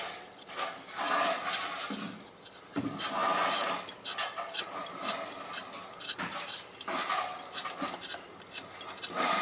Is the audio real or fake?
real